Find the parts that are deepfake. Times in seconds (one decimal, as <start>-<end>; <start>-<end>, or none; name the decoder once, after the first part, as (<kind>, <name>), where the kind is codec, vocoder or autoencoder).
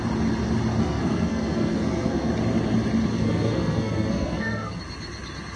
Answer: 0.8-2.3 (codec, SNAC); 3.1-4.8